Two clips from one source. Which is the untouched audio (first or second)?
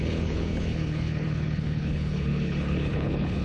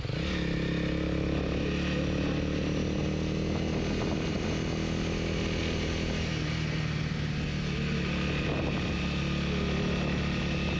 second